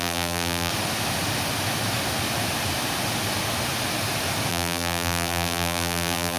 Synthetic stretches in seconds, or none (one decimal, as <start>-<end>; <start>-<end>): 0.0-0.7; 4.5-6.4